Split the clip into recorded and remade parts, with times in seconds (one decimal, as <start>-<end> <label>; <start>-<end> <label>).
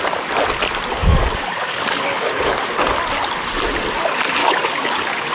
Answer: 0.0-0.9 recorded; 0.9-2.7 remade; 2.7-4.4 recorded; 4.4-5.3 remade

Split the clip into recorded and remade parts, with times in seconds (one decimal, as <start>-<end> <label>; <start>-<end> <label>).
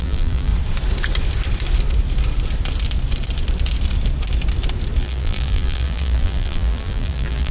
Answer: 0.0-0.5 remade; 0.5-5.0 recorded; 5.0-7.5 remade